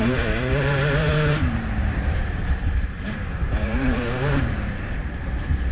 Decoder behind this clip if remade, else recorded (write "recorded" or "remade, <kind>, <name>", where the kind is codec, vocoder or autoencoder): remade, vocoder, BigVGAN v2